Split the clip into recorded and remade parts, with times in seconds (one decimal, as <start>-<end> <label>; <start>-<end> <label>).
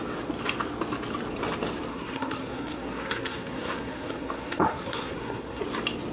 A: 0.0-1.9 recorded; 1.9-5.6 remade; 5.6-6.1 recorded